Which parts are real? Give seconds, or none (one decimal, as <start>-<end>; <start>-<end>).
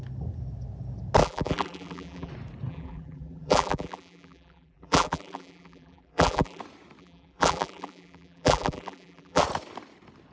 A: 0.0-1.2; 2.3-2.7; 6.6-7.0; 9.4-10.3